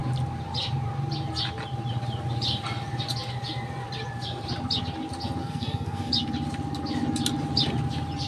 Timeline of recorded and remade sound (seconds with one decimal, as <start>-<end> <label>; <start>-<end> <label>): 0.0-5.4 recorded; 5.4-6.1 remade; 6.1-8.3 recorded